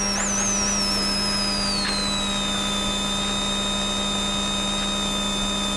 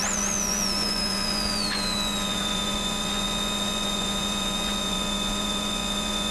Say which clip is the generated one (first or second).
second